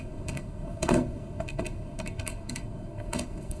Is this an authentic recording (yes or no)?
no